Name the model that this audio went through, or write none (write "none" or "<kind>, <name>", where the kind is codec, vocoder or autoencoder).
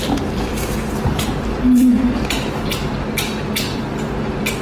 vocoder, BigVGAN v2